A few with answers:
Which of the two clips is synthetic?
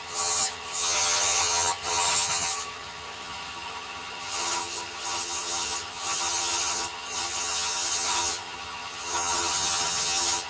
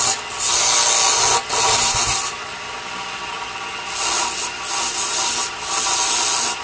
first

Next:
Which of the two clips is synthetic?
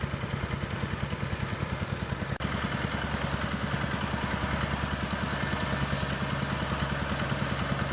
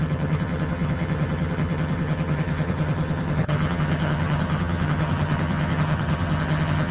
second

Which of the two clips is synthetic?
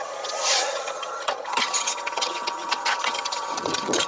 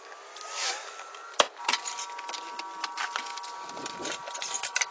first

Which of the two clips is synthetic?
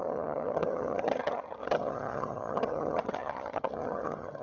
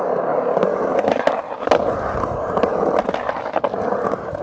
first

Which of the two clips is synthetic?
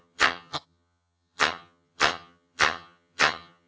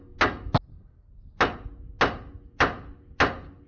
first